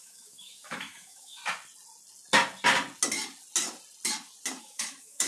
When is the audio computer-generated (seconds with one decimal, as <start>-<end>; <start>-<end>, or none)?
0.0-1.4; 4.6-5.3